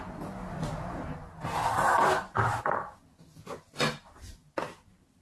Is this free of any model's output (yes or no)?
yes